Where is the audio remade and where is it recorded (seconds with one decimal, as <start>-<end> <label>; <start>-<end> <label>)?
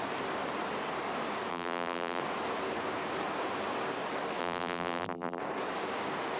0.0-1.5 recorded; 1.5-2.2 remade; 2.2-4.4 recorded; 4.4-5.4 remade; 5.4-6.4 recorded